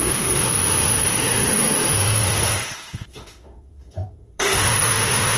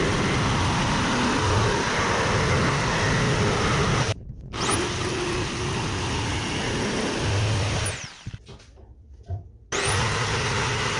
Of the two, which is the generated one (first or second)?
first